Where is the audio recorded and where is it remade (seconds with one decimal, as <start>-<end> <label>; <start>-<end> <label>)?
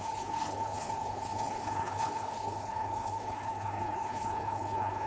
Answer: 0.0-5.1 remade